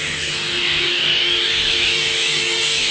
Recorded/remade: remade